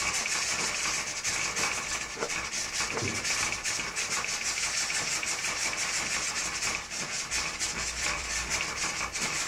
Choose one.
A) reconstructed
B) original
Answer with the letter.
A